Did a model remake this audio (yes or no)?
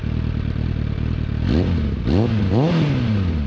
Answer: no